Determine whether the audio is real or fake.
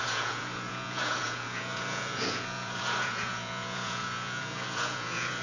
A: fake